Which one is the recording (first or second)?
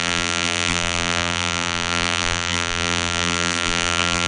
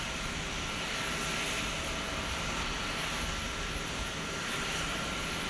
second